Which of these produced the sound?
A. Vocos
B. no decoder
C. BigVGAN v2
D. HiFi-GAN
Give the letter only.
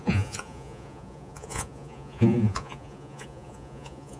A